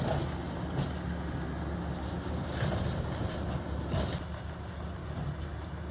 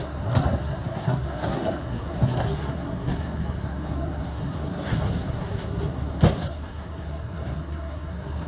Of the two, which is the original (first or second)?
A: first